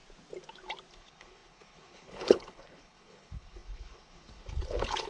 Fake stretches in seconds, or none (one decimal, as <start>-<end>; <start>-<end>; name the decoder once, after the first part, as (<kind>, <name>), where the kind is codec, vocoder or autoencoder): 0.9-5.1 (codec, HILCodec)